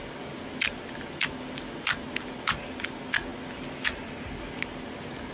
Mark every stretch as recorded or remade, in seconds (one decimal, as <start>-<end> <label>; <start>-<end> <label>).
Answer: 0.0-5.3 recorded